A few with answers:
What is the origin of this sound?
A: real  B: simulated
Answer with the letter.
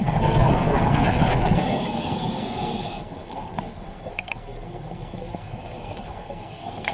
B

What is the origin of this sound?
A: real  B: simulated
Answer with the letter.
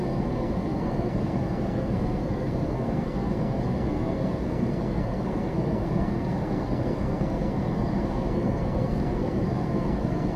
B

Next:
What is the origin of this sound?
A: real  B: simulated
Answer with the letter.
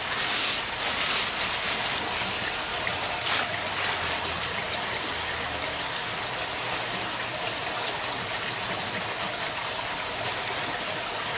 A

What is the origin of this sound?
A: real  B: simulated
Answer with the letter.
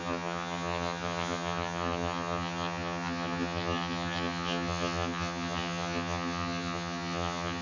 B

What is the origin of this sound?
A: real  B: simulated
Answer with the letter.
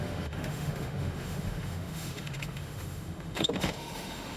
B